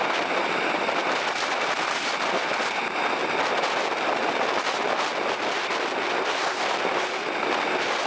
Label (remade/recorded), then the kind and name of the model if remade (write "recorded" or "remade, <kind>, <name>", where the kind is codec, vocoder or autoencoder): recorded